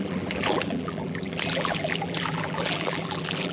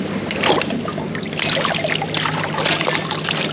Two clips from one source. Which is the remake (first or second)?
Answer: first